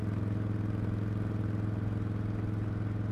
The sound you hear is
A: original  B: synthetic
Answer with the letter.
A